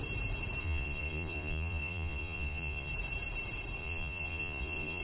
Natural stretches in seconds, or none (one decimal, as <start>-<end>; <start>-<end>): 0.0-0.6; 2.9-3.8